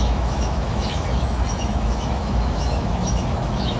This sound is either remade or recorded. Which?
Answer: remade